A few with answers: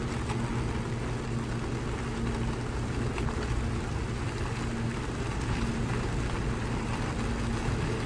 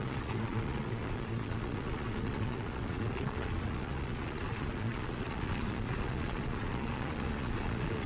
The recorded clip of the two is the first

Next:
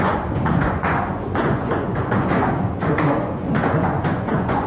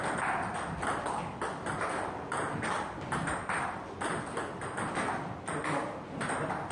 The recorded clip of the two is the second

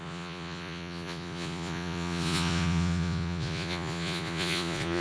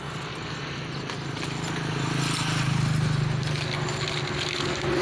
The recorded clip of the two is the second